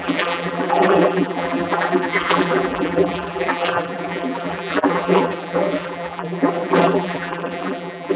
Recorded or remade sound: remade